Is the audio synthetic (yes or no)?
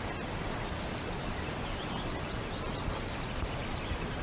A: no